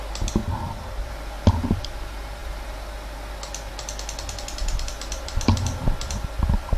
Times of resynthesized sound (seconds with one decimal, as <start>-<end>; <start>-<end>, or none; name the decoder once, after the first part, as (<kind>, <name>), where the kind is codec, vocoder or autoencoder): 0.4-1.1 (vocoder, BigVGAN v2); 4.6-6.8